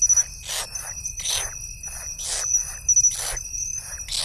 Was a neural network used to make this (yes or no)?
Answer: no